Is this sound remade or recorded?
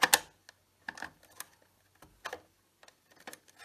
recorded